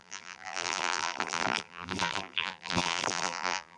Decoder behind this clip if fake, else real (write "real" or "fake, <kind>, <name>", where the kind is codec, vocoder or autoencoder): fake, vocoder, BigVGAN v2